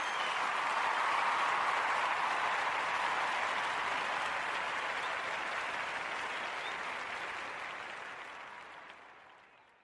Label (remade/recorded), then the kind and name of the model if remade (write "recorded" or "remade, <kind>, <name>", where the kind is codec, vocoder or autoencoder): recorded